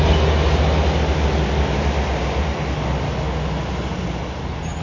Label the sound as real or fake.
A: real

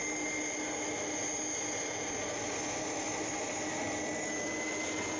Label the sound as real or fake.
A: real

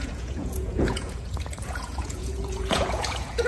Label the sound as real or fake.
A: fake